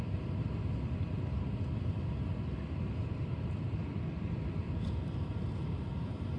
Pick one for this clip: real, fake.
real